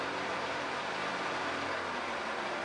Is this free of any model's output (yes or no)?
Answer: no